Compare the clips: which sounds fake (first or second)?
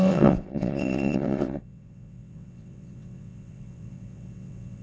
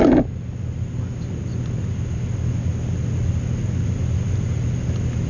first